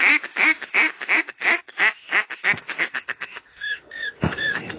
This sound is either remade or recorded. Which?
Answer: remade